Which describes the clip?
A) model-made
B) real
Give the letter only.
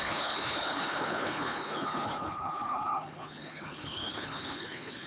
A